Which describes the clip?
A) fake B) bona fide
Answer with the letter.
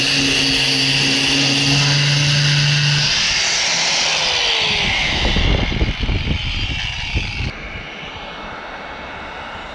B